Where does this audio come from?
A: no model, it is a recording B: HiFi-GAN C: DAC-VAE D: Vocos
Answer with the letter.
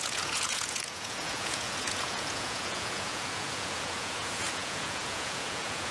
D